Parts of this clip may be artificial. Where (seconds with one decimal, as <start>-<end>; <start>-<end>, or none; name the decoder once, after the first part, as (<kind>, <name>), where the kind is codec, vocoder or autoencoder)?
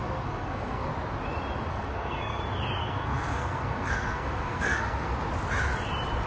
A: 0.0-0.9 (codec, SNAC); 1.7-2.4; 2.8-5.1